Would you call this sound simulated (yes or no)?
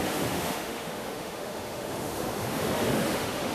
yes